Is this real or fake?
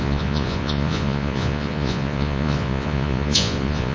fake